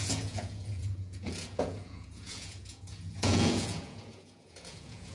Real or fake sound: fake